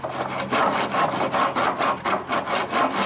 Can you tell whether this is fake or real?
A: real